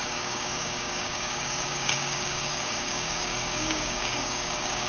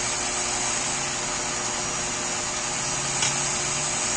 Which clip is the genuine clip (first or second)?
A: second